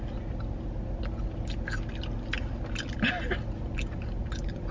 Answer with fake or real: real